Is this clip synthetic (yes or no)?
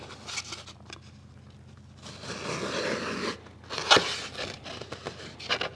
no